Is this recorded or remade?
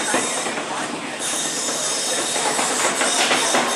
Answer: remade